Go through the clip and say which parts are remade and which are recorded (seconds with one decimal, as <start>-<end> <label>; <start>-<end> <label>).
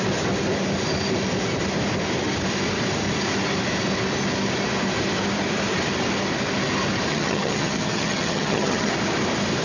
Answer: 0.0-7.1 recorded; 7.1-8.9 remade; 8.9-9.6 recorded